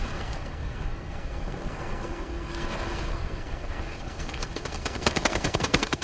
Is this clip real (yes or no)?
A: no